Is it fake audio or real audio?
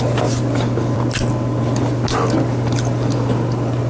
real